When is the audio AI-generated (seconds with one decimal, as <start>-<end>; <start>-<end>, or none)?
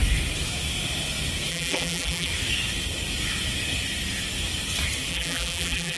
1.5-2.3; 5.1-6.0